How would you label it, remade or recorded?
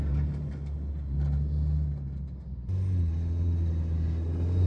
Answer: recorded